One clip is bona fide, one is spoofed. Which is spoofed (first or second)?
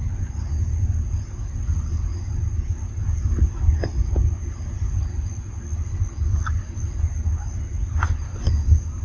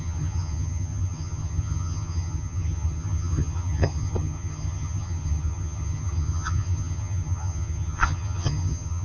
second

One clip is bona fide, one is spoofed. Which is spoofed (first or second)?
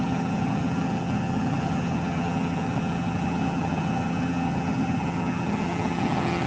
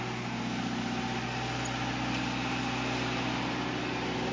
first